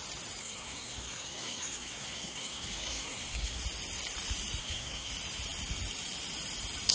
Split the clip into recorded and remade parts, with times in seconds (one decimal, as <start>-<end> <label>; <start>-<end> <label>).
0.0-0.4 recorded; 0.4-3.6 remade; 3.6-4.6 recorded; 4.6-5.1 remade; 5.1-6.9 recorded